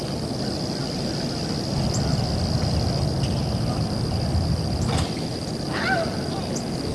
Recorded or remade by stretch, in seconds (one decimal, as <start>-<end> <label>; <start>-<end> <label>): 0.0-6.9 recorded